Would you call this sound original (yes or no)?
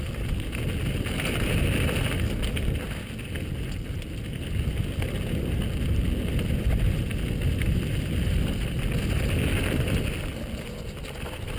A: yes